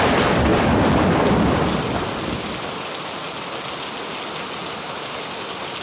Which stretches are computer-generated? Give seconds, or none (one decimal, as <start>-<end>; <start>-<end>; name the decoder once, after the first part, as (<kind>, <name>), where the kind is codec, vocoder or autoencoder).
none